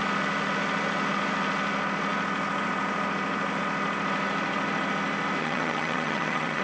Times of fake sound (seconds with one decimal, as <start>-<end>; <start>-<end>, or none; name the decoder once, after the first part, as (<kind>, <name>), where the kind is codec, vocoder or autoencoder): 5.4-6.6 (vocoder, HiFi-GAN)